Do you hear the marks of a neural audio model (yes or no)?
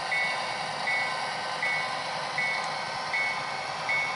no